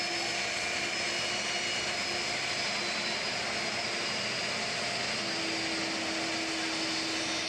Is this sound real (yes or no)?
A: yes